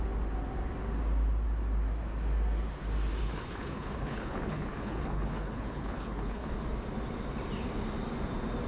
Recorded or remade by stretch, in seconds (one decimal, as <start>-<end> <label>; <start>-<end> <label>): 0.0-3.2 recorded; 3.2-6.5 remade; 6.5-8.7 recorded